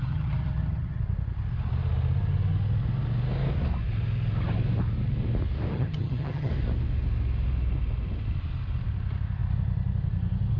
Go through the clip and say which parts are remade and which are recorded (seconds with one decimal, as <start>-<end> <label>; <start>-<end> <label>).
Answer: 0.0-1.0 remade; 1.0-5.7 recorded; 5.7-6.5 remade; 6.5-10.6 recorded